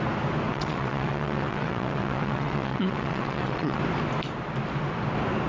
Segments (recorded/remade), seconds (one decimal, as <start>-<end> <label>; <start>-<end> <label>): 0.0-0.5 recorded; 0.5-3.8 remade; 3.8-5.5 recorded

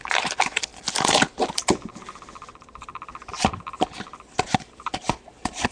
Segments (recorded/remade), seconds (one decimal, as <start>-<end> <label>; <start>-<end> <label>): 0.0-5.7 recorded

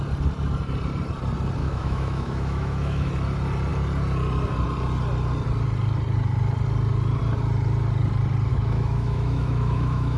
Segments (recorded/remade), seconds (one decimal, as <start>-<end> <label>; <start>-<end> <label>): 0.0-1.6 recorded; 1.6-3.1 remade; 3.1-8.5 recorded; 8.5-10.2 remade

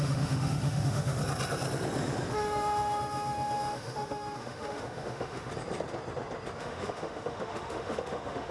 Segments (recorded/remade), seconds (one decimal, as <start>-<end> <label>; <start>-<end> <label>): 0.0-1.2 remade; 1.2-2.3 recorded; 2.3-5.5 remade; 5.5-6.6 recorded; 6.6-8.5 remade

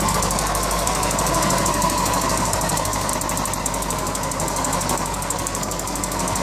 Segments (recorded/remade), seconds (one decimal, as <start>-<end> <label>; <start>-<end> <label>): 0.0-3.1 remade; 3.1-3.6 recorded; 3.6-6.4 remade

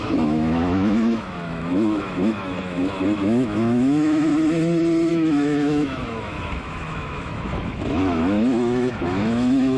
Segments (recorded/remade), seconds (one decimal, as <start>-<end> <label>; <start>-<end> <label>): 0.0-4.3 remade; 4.3-5.1 recorded; 5.1-9.8 remade

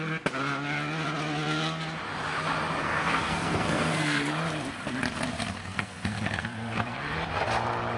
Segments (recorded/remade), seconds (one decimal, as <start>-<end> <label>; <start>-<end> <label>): 0.0-2.8 recorded; 2.8-4.2 remade; 4.2-5.6 recorded; 5.6-7.0 remade; 7.0-8.0 recorded

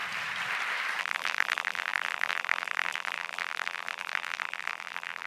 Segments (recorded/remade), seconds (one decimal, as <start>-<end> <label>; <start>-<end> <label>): 0.0-1.0 recorded; 1.0-5.3 remade